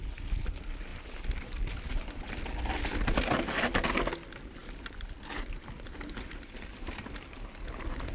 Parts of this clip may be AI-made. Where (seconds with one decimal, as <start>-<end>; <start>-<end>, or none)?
none